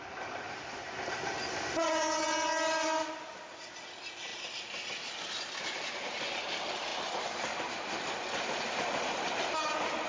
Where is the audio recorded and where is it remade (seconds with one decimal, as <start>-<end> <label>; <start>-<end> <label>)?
0.0-10.1 recorded